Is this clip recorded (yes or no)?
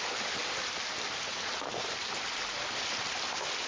yes